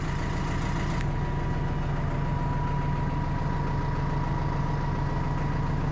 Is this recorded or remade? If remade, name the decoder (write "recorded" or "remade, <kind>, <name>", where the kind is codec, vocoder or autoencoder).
recorded